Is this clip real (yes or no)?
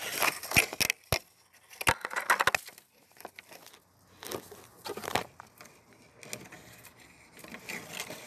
yes